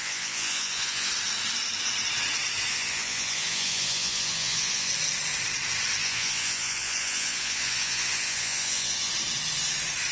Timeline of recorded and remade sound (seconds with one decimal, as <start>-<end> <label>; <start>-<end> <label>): 0.0-1.1 remade; 1.1-2.7 recorded; 2.7-4.9 remade; 4.9-6.0 recorded; 6.0-9.1 remade; 9.1-10.1 recorded